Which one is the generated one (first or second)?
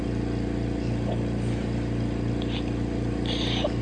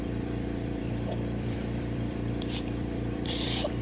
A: second